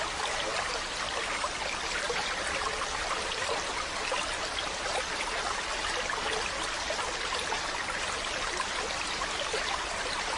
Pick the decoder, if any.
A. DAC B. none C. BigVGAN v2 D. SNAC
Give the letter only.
B